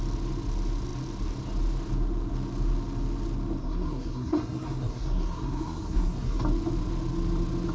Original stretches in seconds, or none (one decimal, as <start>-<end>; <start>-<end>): 0.0-3.6; 6.4-7.7